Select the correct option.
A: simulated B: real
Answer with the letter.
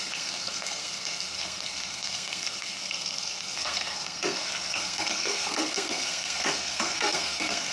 A